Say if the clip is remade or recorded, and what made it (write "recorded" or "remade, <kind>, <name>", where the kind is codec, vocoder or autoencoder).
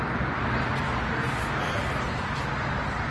recorded